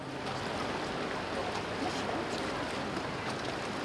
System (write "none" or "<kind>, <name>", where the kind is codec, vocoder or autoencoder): none